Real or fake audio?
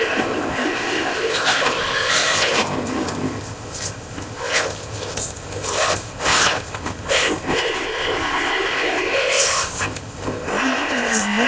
fake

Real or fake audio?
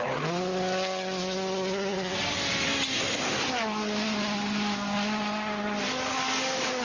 real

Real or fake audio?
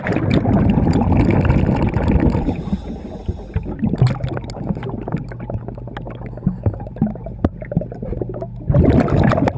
real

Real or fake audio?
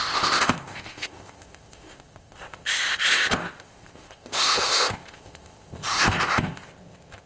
fake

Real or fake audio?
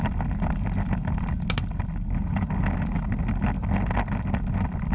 real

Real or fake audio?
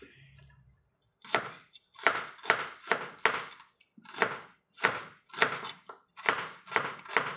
real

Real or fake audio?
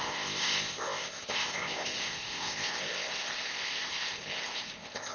fake